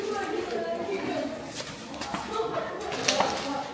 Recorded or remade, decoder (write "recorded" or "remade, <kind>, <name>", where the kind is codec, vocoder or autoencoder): recorded